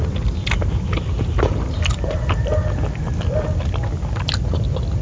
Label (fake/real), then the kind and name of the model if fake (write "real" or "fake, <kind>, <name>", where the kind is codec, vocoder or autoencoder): real